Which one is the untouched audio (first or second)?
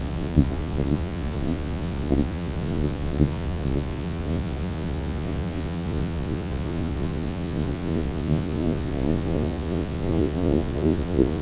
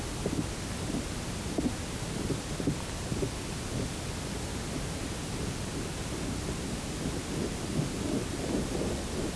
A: second